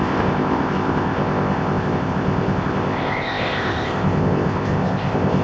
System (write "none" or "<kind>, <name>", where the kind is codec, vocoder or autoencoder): codec, ZipCodec